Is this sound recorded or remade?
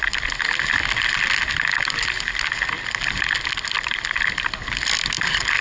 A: recorded